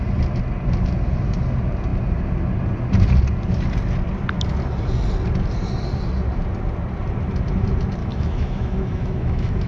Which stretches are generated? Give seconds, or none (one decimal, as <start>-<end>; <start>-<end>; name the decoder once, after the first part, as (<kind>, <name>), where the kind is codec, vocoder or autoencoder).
8.0-9.7 (autoencoder, DAC-VAE)